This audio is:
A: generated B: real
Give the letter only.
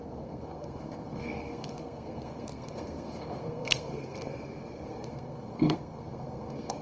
A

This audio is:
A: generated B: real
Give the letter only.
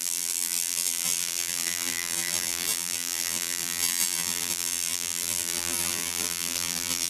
A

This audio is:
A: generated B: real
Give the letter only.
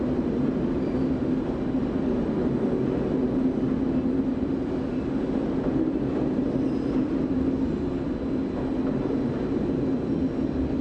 B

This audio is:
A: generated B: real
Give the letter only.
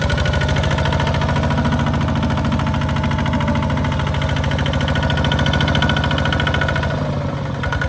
B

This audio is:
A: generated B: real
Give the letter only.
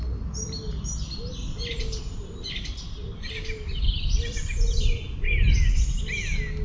B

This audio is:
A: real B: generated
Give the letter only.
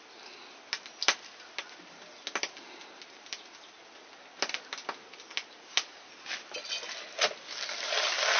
A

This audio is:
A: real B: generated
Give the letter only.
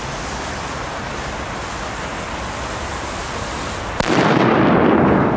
A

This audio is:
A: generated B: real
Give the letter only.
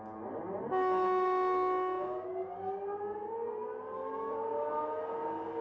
B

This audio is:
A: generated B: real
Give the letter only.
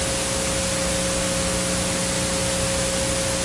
B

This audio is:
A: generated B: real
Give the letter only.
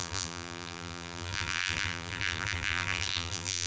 A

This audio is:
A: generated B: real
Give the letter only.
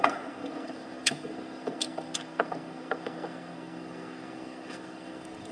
A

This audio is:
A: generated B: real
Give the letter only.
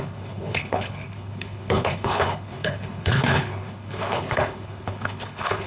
A